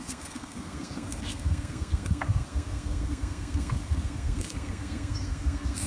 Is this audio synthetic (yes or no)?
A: yes